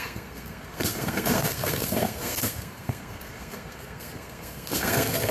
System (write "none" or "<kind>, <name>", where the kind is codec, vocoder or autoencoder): codec, SNAC